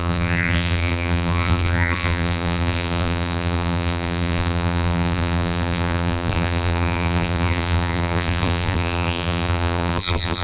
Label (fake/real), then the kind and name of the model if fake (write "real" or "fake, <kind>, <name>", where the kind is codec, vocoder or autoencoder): fake, vocoder, BigVGAN v2